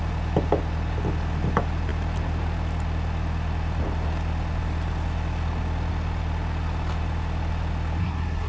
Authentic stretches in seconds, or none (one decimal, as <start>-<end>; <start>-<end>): 0.0-8.0

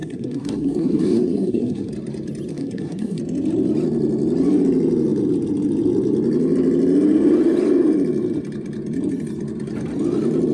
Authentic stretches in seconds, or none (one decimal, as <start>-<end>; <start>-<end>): 1.9-2.5; 3.2-10.5

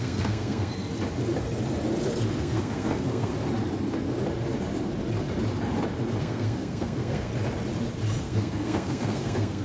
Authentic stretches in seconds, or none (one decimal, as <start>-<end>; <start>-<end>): 0.7-2.4; 3.3-6.2; 7.3-8.2

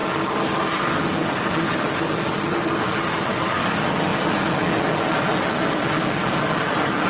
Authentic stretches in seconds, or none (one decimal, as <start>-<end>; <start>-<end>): 0.0-7.1

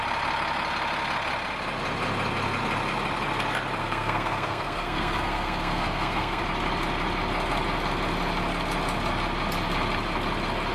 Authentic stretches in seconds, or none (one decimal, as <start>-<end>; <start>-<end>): 0.0-3.8; 6.4-10.7

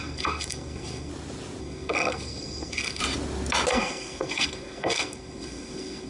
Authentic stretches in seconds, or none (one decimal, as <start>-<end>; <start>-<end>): 1.1-1.6; 3.0-3.7

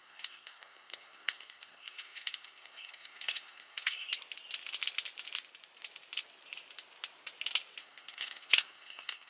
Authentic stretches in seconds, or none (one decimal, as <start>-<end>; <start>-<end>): 4.1-7.8

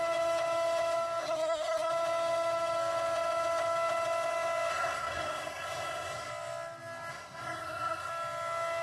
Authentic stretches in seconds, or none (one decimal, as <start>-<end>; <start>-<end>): 0.0-1.2; 1.9-4.7; 6.3-7.1; 8.1-8.8